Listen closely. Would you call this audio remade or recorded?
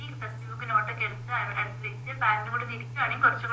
remade